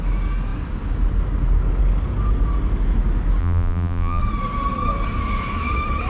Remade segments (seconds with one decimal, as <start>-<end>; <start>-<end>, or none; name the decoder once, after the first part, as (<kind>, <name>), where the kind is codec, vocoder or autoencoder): 3.4-4.2 (vocoder, BigVGAN v2)

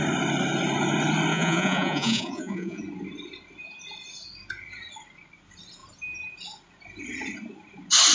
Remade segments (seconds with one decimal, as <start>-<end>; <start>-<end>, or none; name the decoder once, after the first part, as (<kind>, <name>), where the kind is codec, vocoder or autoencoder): 1.3-2.8 (vocoder, Vocos)

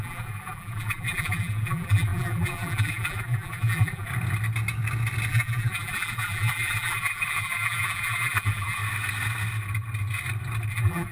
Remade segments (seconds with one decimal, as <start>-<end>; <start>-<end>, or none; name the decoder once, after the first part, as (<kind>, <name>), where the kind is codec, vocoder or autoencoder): 0.0-4.1 (vocoder, BigVGAN v2); 5.3-8.8; 10.7-11.1

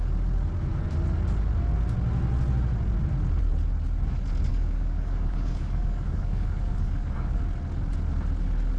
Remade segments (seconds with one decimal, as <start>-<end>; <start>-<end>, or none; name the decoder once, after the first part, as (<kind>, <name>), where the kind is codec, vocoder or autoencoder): 4.5-7.4 (codec, DAC)

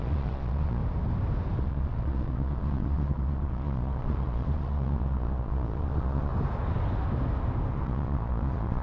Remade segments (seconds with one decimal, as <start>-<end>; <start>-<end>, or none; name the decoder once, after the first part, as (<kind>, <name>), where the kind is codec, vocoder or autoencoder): 0.0-0.8 (vocoder, Vocos); 1.6-6.3; 7.7-8.8

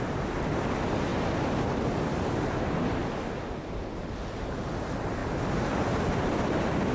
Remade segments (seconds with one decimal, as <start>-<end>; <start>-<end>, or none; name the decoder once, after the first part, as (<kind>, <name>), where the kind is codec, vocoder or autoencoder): none

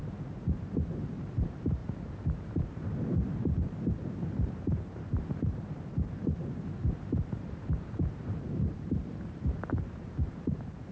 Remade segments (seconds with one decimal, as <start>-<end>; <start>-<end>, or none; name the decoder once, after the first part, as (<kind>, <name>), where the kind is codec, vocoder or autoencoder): 0.0-10.9 (vocoder, BigVGAN v2)